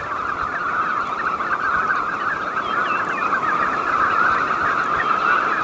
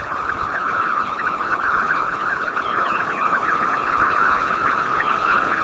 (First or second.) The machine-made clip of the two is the second